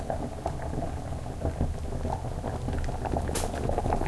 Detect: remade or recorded recorded